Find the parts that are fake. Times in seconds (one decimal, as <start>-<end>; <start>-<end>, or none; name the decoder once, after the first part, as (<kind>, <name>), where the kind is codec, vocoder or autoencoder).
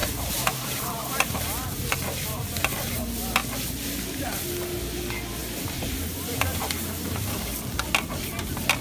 0.0-2.7 (vocoder, BigVGAN v2); 5.4-7.4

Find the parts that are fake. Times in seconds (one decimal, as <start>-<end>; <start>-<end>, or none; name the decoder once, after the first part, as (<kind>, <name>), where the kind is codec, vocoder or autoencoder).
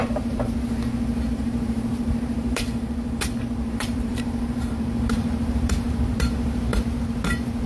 0.0-7.7 (vocoder, BigVGAN v2)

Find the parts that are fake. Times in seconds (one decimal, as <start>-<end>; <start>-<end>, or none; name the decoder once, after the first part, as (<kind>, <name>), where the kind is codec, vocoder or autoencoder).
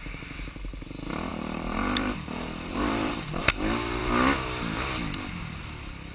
1.3-3.4 (vocoder, BigVGAN v2)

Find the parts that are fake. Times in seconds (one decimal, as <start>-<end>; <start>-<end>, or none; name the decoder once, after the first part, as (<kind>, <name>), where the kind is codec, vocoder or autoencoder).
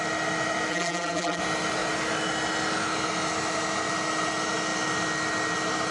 0.7-1.4 (vocoder, BigVGAN v2)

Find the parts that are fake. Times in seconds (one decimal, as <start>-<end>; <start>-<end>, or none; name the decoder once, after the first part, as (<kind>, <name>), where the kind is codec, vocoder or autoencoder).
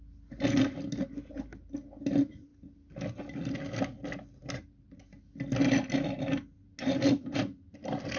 4.4-5.0 (vocoder, BigVGAN v2)